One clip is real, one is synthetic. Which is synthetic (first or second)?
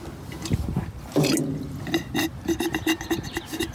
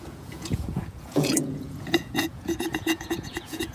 second